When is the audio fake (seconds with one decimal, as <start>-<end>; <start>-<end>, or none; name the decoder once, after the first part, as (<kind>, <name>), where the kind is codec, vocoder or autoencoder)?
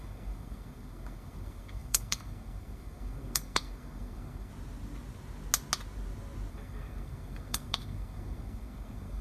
0.0-4.5 (codec, SNAC); 6.5-9.2